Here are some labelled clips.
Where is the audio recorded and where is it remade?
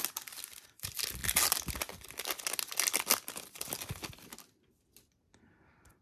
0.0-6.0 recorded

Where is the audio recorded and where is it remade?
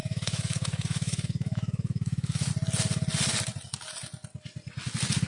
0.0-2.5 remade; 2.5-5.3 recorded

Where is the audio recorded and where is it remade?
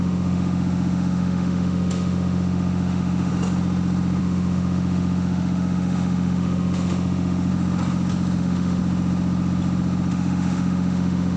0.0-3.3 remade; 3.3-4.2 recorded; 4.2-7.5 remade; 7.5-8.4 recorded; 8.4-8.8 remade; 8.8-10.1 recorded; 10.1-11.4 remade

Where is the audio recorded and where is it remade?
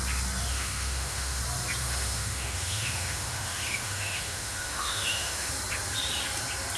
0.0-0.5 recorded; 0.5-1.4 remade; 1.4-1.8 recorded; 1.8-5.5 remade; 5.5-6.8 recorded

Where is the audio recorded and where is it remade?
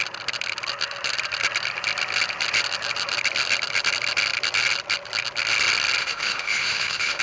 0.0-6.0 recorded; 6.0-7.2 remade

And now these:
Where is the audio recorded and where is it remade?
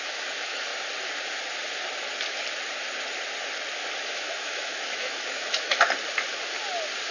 0.0-0.7 remade; 0.7-4.1 recorded; 4.1-5.7 remade; 5.7-7.1 recorded